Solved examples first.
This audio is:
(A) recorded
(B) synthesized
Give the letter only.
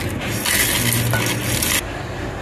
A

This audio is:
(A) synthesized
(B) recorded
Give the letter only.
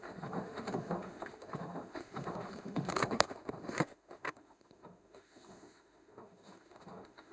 A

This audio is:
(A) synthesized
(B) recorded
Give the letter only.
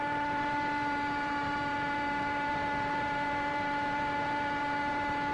A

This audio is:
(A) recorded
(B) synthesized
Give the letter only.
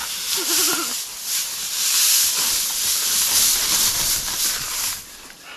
A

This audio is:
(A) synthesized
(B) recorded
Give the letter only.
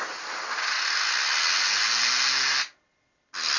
B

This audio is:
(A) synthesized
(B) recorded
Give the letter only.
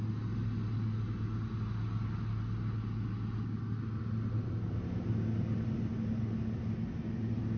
B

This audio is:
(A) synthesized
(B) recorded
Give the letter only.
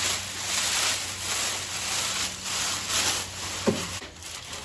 B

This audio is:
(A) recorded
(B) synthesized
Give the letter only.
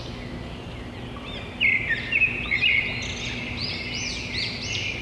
A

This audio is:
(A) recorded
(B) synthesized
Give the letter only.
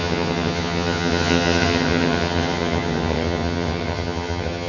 B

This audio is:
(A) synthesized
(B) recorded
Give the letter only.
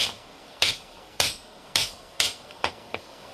A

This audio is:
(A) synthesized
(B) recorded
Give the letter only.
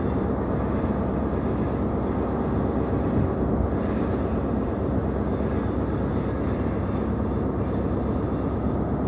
B